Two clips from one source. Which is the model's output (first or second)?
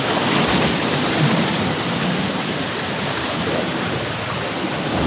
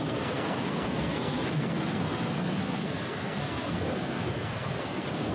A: second